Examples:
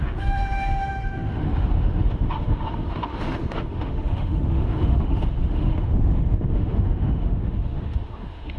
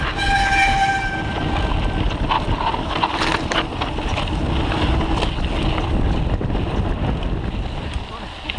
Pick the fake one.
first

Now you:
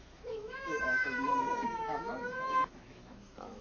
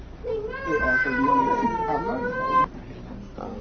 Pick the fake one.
first